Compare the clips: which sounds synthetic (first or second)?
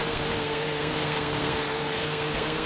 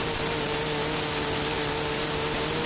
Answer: first